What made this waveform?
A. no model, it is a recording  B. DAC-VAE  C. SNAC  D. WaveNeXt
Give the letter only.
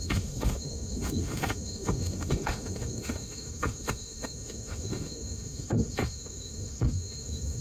B